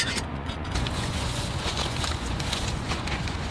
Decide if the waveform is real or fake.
fake